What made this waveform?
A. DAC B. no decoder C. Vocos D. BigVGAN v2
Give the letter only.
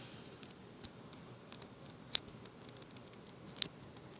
B